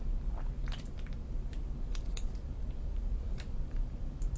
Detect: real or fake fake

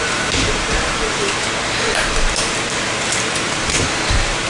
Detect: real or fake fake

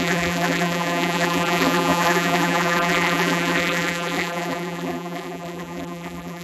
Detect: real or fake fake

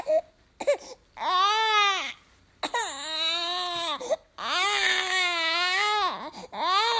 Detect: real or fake real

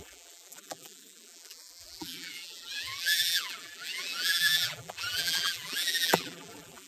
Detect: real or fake fake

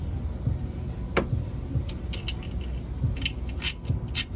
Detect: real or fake real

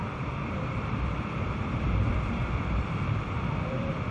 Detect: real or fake fake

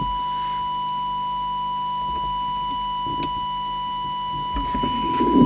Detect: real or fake real